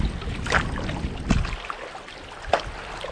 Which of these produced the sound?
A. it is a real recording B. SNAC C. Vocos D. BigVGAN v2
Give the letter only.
A